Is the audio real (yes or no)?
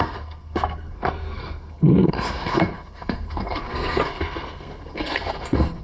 no